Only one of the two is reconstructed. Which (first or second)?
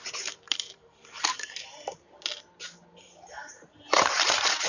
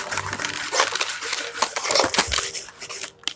first